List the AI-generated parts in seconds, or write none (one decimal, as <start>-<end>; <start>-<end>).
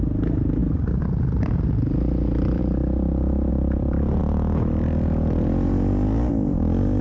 0.6-2.6; 3.5-4.2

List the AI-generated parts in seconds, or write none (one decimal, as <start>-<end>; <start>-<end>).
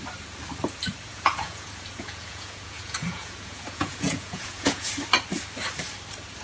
1.1-4.9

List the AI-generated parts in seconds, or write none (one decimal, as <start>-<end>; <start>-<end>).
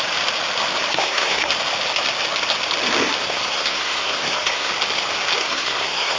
0.9-1.5; 3.2-4.7; 5.4-6.2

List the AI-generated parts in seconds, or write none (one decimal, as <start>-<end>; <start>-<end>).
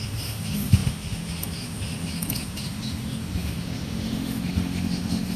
0.0-5.4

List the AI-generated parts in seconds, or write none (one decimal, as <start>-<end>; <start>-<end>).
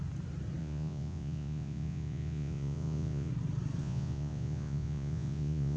0.6-3.3; 3.8-5.8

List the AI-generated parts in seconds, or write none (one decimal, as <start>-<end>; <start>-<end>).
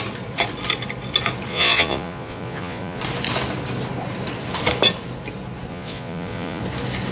1.5-3.0; 5.7-6.6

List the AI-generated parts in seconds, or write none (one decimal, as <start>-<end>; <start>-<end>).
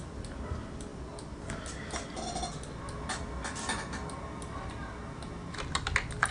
none